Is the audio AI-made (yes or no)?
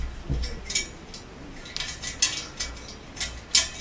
no